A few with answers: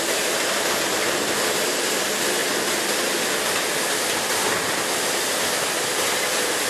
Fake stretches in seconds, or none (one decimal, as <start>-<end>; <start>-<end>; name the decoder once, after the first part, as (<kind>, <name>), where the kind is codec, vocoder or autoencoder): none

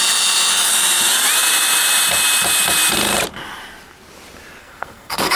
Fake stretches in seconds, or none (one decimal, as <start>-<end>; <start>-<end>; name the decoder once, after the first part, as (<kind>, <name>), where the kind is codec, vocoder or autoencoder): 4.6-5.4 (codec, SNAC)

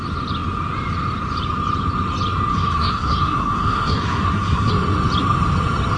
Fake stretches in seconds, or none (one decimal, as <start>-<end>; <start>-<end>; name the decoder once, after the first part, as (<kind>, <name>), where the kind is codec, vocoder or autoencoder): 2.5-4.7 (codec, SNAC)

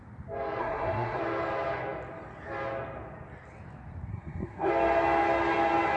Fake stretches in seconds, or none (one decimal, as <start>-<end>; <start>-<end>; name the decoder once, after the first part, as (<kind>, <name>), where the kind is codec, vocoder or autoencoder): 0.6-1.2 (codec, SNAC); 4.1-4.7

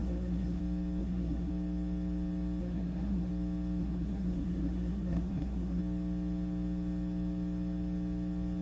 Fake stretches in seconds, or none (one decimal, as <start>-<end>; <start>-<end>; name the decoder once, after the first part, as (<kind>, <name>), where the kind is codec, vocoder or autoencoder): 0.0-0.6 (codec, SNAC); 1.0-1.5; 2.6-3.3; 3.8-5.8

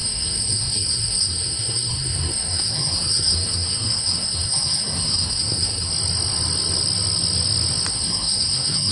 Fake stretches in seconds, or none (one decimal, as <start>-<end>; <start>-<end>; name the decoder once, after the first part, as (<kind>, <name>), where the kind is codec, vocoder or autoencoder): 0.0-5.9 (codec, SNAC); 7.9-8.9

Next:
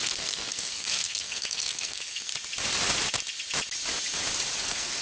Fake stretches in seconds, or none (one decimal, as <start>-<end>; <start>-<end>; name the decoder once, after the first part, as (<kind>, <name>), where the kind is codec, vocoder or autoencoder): 0.0-2.3 (codec, SNAC); 4.6-5.0

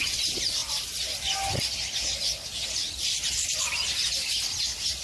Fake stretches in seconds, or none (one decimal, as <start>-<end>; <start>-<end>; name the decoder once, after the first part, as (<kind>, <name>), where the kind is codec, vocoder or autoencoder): none